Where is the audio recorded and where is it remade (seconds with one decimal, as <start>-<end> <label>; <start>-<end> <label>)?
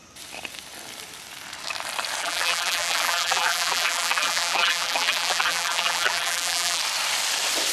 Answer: 0.0-2.2 recorded; 2.2-6.8 remade; 6.8-7.7 recorded